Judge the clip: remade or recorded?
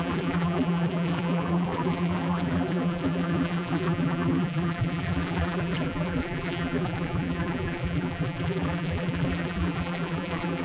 remade